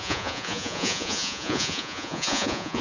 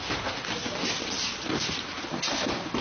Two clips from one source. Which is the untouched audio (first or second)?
second